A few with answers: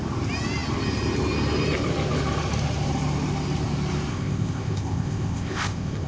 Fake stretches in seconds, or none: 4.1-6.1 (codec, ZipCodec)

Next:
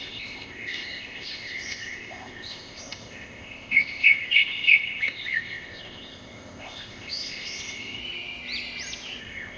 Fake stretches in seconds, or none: 0.0-8.0 (codec, ZipCodec); 9.2-9.6